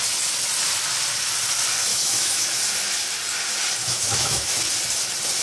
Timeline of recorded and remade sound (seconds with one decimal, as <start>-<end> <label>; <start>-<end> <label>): 0.0-1.9 recorded; 1.9-2.6 remade; 2.6-3.8 recorded; 3.8-4.6 remade; 4.6-5.4 recorded